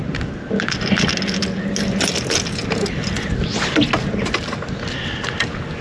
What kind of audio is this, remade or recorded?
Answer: recorded